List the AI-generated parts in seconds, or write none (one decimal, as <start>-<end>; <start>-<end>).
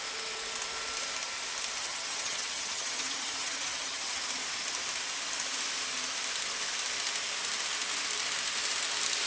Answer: 1.8-4.2